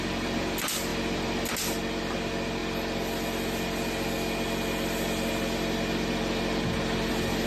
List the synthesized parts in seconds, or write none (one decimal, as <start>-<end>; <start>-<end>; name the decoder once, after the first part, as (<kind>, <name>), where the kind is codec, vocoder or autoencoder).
none